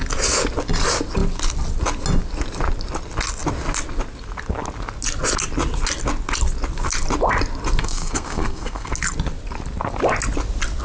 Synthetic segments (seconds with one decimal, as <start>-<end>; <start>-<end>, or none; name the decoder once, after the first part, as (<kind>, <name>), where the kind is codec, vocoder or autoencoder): 7.8-8.9 (codec, SNAC)